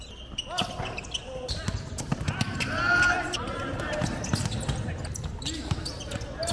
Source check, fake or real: real